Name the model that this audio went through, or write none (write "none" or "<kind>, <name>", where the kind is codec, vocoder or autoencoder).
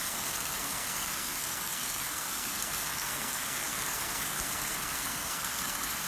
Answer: codec, SNAC